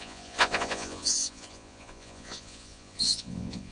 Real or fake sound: fake